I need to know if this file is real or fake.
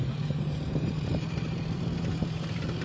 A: fake